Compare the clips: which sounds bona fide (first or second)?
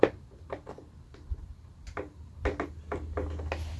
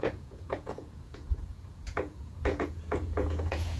first